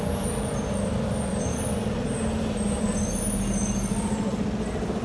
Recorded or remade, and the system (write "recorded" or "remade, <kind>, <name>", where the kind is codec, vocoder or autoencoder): recorded